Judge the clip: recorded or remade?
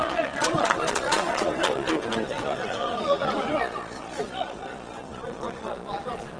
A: remade